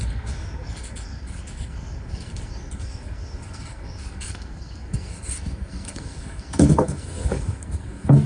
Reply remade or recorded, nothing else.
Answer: remade